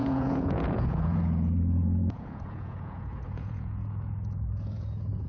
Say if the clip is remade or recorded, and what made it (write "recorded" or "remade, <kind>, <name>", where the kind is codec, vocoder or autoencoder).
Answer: remade, vocoder, Vocos